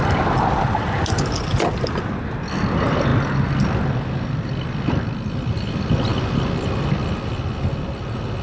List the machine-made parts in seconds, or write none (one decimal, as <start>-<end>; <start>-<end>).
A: none